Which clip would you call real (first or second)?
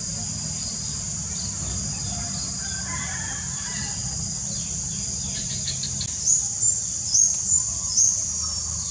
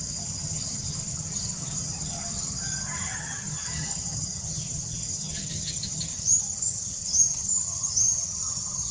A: first